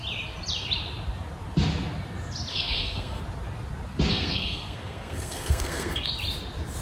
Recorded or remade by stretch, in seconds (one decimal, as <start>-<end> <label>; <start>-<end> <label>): 0.0-2.5 recorded; 2.5-3.2 remade; 3.2-4.1 recorded; 4.1-6.1 remade; 6.1-6.8 recorded